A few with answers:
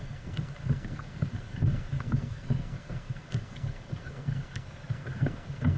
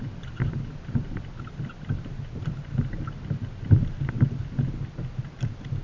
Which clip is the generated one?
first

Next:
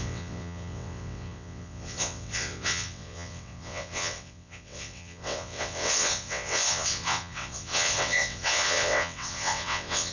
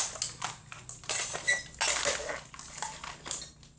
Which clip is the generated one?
first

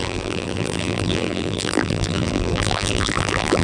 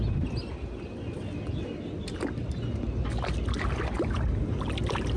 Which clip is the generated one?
first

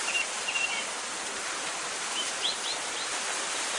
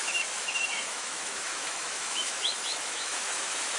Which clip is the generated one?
second